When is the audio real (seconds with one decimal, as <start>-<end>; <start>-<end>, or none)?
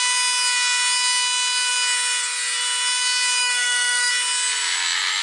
0.0-3.4; 4.1-5.2